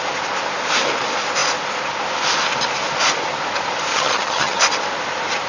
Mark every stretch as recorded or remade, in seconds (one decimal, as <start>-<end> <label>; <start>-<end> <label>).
0.0-3.9 recorded; 3.9-4.6 remade; 4.6-5.5 recorded